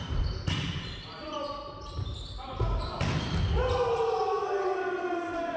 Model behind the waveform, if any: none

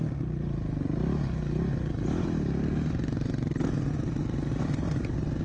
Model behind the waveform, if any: vocoder, BigVGAN v2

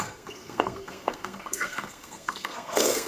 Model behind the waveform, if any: codec, SNAC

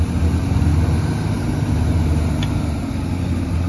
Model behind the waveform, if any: none